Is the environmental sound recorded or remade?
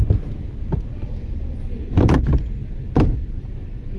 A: recorded